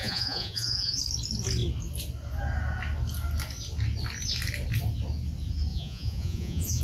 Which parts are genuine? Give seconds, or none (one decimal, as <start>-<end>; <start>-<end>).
1.0-5.7